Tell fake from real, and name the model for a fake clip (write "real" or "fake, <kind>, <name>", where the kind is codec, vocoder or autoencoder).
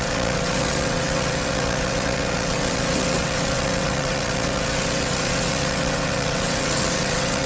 fake, vocoder, WaveNeXt